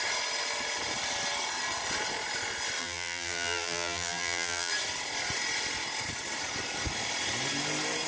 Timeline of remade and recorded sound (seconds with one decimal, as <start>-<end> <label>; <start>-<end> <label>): 0.0-2.8 recorded; 2.8-4.7 remade; 4.7-8.1 recorded